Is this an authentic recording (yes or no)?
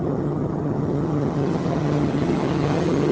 no